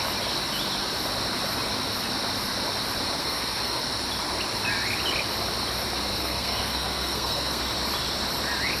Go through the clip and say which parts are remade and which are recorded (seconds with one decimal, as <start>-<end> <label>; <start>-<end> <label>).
0.0-3.2 recorded; 3.2-3.8 remade; 3.8-6.1 recorded; 6.1-7.6 remade; 7.6-8.8 recorded